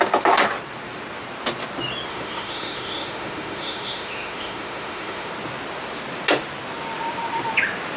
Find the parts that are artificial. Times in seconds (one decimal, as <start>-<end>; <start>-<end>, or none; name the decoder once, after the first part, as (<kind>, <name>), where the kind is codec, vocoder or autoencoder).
2.1-5.3 (autoencoder, DAC-VAE)